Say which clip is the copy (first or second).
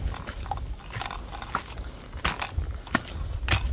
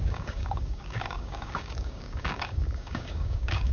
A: second